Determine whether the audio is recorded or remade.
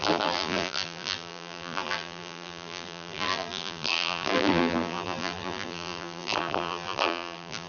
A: remade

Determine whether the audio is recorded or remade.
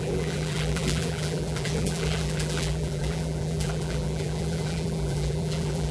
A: remade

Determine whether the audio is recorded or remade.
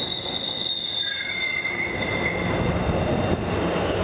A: recorded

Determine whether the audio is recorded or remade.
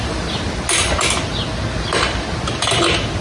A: recorded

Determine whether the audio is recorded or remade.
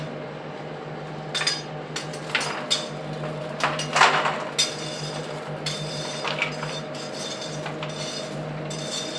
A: recorded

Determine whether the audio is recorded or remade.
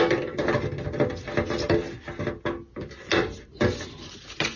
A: recorded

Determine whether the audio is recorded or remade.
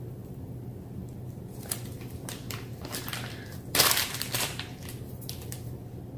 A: remade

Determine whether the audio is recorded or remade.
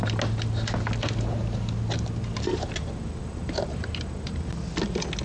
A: recorded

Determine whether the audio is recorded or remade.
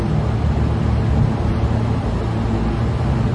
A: recorded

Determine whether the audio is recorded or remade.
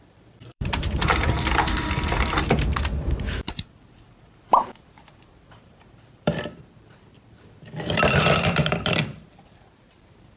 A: remade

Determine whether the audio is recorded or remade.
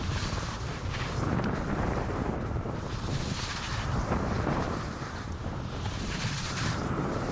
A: remade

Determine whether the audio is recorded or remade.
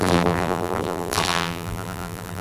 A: remade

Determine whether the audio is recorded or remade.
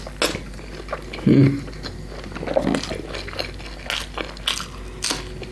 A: recorded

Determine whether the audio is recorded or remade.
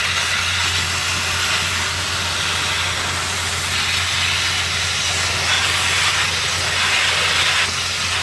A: recorded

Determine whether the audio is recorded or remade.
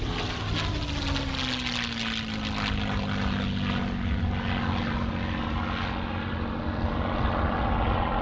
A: recorded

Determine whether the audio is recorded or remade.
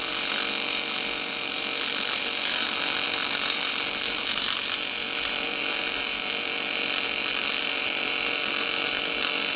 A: remade